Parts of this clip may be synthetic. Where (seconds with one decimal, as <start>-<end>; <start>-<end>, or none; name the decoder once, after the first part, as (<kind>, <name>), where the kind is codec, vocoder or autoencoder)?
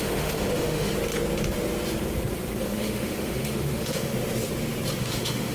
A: 0.0-0.9 (autoencoder, DAC-VAE); 2.6-4.1; 5.0-5.5